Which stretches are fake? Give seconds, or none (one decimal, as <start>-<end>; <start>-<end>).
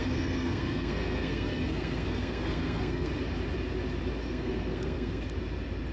0.0-3.1; 4.2-5.2